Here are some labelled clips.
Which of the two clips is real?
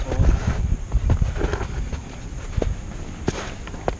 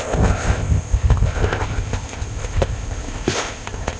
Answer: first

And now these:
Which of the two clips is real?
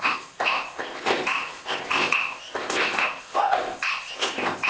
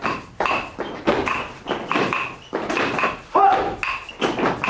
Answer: second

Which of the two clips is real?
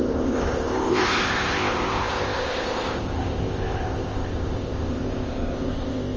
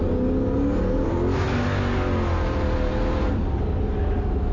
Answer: second